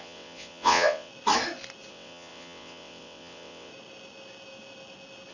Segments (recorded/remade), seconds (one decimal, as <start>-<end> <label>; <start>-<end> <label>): 0.0-1.1 remade; 1.1-1.9 recorded; 1.9-3.7 remade; 3.7-5.3 recorded